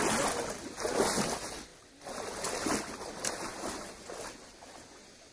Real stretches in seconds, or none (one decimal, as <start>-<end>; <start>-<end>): 0.0-5.3